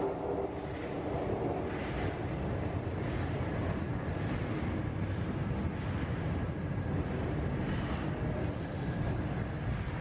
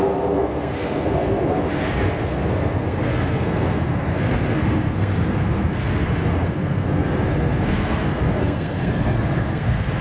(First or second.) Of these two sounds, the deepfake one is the second